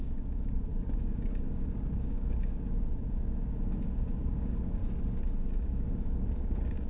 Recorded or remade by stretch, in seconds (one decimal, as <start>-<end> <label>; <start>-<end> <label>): 0.0-4.8 remade; 4.8-5.4 recorded; 5.4-6.9 remade